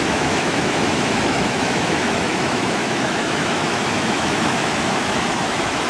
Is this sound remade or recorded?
remade